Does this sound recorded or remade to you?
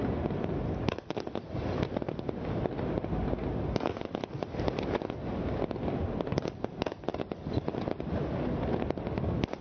recorded